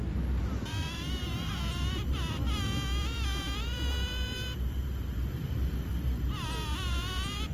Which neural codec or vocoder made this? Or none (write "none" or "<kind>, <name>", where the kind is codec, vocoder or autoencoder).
none